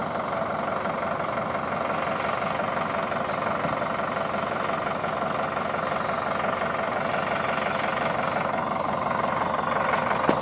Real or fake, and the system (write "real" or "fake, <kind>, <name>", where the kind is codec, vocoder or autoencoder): real